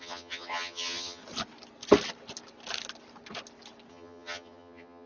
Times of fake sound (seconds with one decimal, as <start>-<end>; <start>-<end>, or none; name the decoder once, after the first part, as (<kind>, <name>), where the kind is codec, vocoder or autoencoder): 0.0-1.2 (vocoder, HiFi-GAN); 3.9-5.1